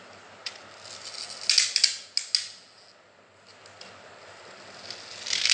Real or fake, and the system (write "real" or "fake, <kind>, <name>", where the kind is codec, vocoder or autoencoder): real